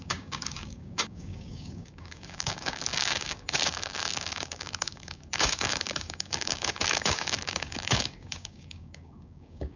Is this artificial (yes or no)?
yes